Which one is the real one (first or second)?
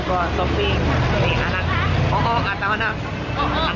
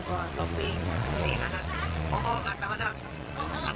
first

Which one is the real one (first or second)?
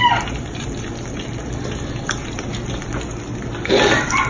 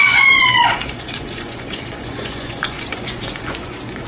first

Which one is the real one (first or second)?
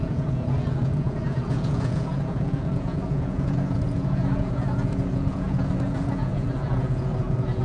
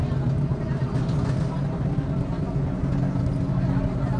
second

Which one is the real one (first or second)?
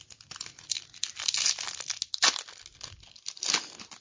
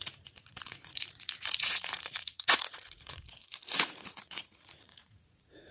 first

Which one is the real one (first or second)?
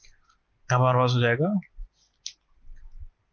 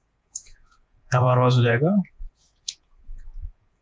first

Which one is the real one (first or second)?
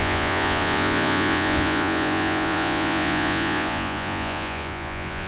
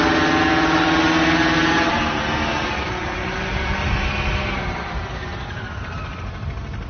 second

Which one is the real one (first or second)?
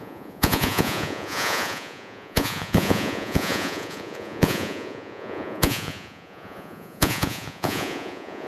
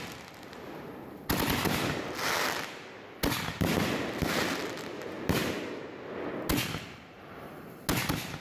second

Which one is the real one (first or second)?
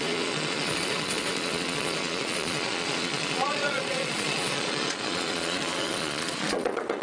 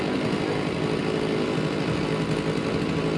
second